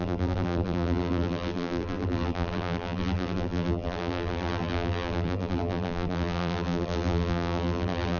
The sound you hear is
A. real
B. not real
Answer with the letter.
B